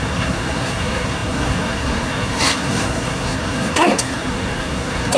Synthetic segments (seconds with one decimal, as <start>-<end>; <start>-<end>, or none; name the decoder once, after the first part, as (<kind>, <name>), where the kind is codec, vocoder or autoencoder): 0.0-5.2 (codec, SNAC)